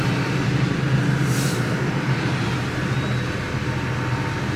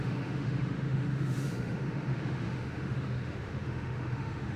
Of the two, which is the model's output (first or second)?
second